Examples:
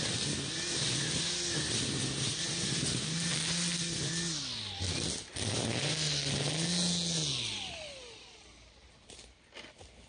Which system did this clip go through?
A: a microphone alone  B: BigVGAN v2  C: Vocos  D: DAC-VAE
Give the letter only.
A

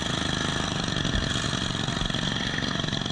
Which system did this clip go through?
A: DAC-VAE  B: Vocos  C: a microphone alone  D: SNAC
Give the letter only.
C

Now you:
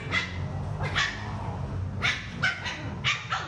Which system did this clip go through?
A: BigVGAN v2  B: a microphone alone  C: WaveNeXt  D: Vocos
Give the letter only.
B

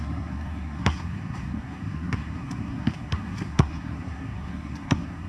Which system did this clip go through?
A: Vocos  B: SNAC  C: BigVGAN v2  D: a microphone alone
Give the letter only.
B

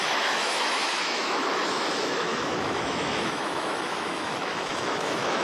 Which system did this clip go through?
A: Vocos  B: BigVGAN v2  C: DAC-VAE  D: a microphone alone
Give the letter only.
C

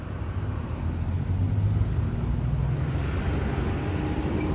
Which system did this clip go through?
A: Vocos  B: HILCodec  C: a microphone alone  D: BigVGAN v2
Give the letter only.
C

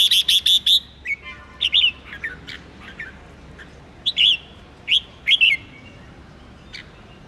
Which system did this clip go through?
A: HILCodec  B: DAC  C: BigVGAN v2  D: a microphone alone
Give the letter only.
D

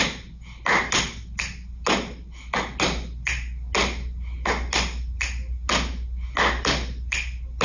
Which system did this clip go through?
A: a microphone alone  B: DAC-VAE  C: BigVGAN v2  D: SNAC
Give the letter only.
A